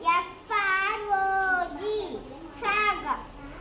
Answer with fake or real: real